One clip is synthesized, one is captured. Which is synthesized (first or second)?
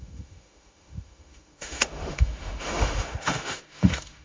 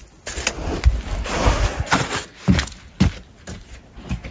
first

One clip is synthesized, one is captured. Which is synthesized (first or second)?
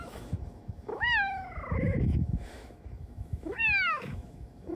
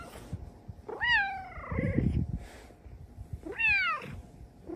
first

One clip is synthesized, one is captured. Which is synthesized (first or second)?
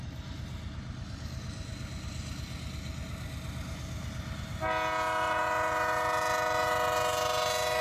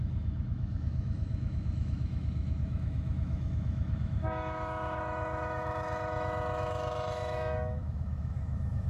second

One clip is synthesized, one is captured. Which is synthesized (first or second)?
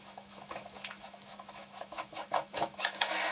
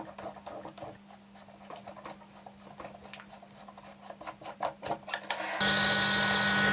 first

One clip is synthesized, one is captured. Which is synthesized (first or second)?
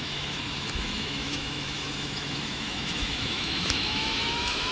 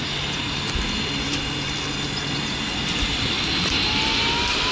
first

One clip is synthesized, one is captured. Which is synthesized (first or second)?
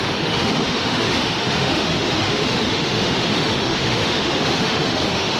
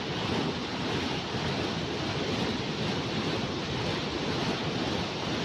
first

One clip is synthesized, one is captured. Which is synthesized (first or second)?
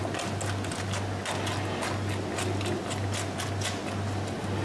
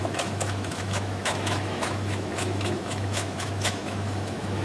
second